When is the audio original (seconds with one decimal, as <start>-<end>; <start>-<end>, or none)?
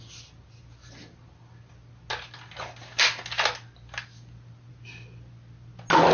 0.0-6.1